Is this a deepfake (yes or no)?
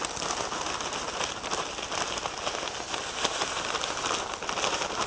no